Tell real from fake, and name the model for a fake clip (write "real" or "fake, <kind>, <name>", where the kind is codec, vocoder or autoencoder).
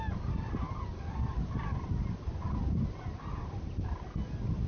real